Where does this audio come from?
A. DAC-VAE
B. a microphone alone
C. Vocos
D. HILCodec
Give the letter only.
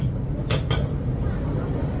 B